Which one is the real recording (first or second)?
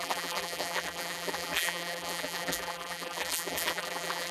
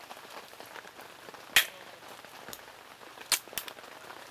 second